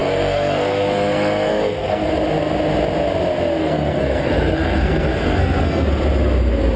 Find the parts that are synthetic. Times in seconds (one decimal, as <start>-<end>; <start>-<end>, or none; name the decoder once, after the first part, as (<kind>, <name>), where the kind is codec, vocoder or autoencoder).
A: 0.0-2.1 (codec, SNAC); 3.6-5.9